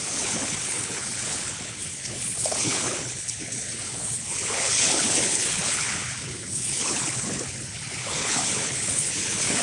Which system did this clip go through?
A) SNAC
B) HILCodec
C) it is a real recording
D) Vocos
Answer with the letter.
B